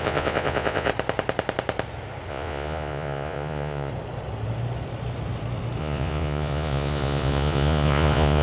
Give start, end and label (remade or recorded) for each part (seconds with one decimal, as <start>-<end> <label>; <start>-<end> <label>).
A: 0.0-0.9 remade; 0.9-2.3 recorded; 2.3-3.9 remade; 3.9-5.8 recorded; 5.8-8.4 remade